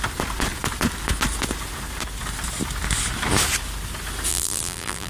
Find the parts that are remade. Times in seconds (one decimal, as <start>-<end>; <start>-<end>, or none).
4.3-5.1